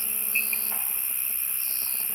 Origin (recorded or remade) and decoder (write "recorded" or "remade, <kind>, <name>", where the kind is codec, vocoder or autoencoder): recorded